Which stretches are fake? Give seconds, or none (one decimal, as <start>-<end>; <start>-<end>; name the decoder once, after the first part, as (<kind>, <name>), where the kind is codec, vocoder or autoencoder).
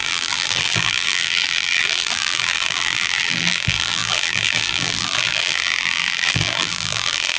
0.0-7.4 (vocoder, BigVGAN v2)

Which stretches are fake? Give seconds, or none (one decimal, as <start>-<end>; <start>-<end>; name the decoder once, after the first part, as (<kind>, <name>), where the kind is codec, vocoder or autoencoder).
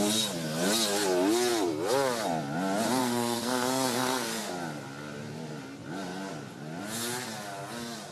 3.0-4.5 (codec, SNAC)